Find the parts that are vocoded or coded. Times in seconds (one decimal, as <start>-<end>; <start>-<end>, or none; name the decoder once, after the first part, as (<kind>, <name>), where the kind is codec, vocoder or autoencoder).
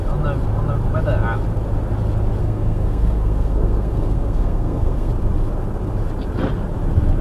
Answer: 2.4-5.1 (codec, SNAC)